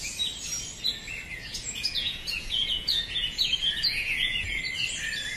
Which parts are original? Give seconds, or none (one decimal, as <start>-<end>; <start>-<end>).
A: 0.0-1.4; 4.6-5.4